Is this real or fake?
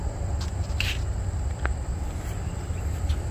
real